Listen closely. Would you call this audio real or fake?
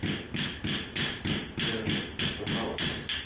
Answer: real